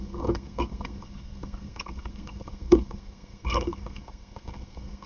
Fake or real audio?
fake